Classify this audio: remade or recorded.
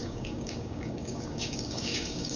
remade